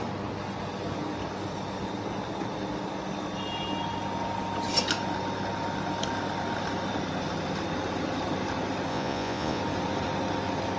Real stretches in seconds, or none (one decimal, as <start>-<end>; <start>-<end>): 0.0-8.9; 9.6-10.8